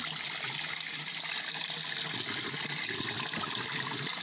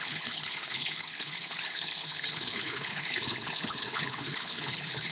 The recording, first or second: first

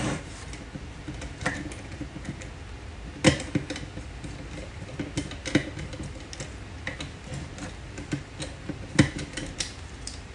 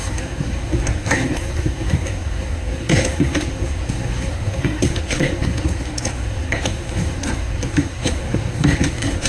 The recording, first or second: first